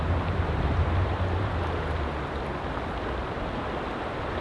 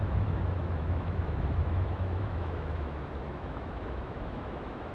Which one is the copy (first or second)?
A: second